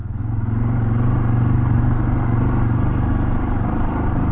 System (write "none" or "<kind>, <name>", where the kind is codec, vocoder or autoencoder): none